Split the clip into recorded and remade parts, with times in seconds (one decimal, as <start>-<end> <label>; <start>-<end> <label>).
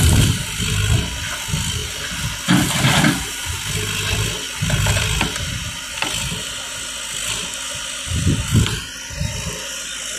0.0-10.2 recorded